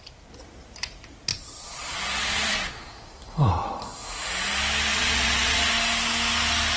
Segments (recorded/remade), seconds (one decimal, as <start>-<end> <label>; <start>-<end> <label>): 0.0-1.3 recorded; 1.3-3.2 remade; 3.2-4.9 recorded; 4.9-5.7 remade; 5.7-6.8 recorded